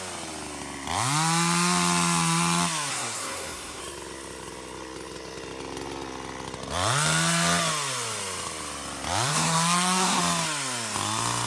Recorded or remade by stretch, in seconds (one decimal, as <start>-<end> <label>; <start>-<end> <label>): 0.0-2.9 recorded; 2.9-3.8 remade; 3.8-9.3 recorded; 9.3-10.2 remade; 10.2-11.5 recorded